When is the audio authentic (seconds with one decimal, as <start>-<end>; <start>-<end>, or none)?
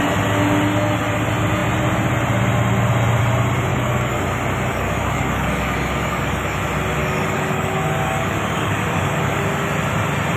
0.0-3.7; 4.2-4.7; 6.6-7.0; 9.4-10.4